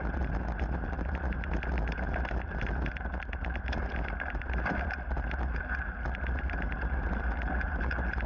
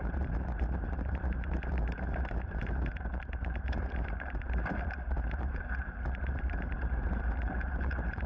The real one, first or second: first